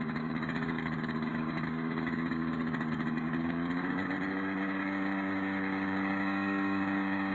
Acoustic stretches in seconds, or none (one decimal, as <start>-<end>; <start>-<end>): none